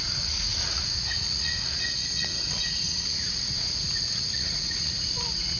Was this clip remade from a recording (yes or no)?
yes